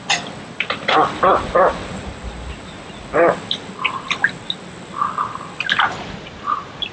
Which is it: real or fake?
real